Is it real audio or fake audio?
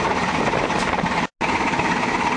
real